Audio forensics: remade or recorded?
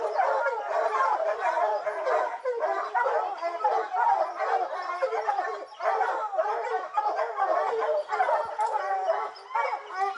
recorded